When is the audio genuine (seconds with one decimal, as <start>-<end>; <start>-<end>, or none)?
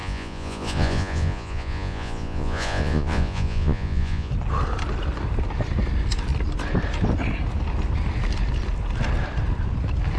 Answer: 4.3-10.2